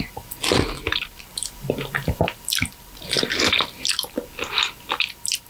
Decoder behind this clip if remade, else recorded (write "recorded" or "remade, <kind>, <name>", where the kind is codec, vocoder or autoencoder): recorded